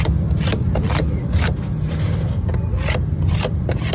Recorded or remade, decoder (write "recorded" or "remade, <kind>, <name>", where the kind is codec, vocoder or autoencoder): recorded